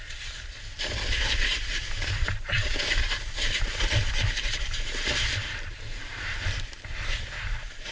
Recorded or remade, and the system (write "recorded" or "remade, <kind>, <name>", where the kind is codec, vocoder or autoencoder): remade, vocoder, BigVGAN v2